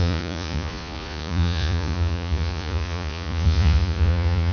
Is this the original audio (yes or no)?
no